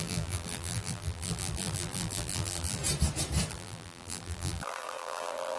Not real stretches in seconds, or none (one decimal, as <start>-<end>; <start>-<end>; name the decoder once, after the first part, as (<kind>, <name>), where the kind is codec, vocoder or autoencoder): 0.0-2.8 (vocoder, BigVGAN v2); 3.5-5.6